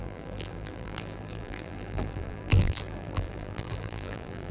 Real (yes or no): no